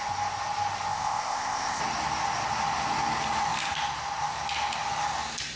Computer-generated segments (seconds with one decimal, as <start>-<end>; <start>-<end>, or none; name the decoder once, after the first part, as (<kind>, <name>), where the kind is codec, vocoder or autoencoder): 0.9-1.8 (codec, ZipCodec)